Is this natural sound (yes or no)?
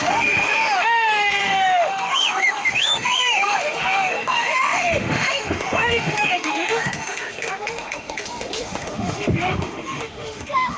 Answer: no